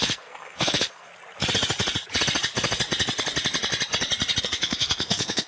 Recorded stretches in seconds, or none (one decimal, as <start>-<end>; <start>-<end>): 1.1-4.4